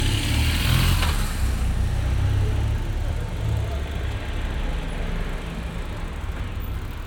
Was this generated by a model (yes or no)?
no